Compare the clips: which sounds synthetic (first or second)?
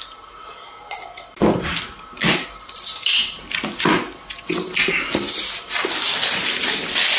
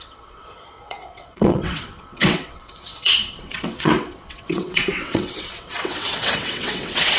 second